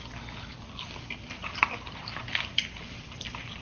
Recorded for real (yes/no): yes